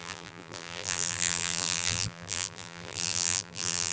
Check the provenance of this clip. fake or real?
fake